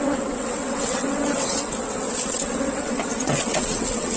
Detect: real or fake fake